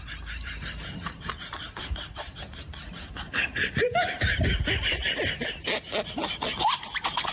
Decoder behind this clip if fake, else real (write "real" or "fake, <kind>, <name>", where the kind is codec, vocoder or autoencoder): fake, vocoder, BigVGAN v2